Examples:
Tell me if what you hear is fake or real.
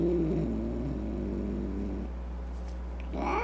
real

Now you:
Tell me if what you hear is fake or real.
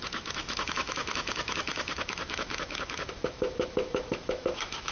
fake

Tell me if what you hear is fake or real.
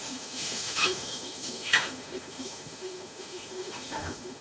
fake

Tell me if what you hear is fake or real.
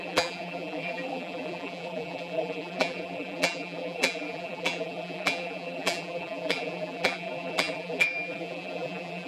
fake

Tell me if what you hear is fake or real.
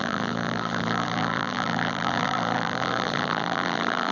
fake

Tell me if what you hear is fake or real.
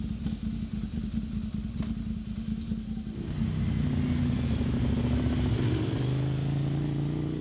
real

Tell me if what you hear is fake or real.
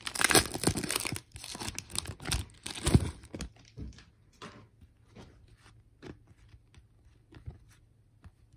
real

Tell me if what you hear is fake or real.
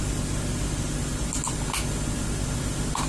real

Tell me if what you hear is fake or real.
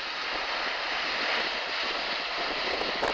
real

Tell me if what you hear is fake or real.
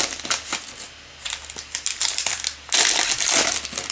real